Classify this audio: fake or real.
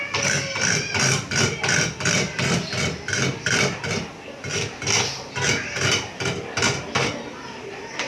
real